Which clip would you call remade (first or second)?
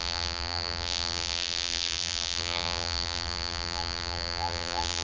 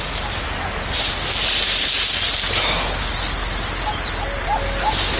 first